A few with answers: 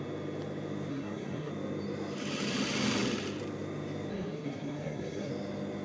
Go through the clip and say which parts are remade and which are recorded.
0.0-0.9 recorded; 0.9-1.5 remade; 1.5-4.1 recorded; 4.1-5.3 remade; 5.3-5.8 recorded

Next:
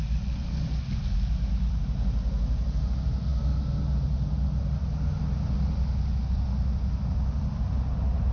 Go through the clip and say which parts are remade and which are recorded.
0.0-8.3 recorded

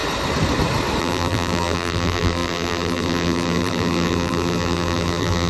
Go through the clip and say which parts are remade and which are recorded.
0.0-1.0 recorded; 1.0-5.5 remade

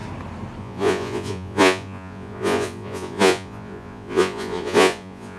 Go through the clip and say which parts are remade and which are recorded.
0.0-0.6 recorded; 0.6-5.4 remade